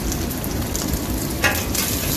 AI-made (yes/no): yes